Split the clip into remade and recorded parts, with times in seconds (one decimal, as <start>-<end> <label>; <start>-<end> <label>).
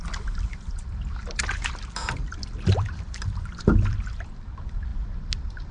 0.0-1.2 recorded; 1.2-4.3 remade; 4.3-5.7 recorded